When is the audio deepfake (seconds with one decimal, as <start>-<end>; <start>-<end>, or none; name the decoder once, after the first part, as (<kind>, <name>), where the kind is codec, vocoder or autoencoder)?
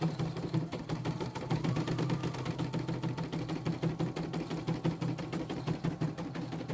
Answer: 0.0-2.2 (vocoder, BigVGAN v2); 5.2-6.7